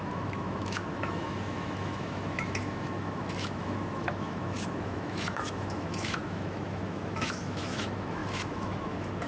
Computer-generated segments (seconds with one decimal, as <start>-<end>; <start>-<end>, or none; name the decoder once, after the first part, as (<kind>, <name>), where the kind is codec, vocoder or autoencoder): 0.0-9.3 (autoencoder, DAC-VAE)